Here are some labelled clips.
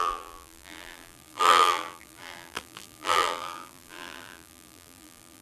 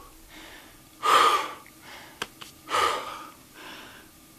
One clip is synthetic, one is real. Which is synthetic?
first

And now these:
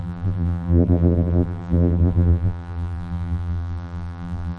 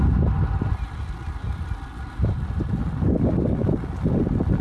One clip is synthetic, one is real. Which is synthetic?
first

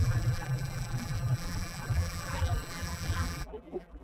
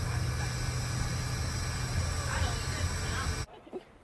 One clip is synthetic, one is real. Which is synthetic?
first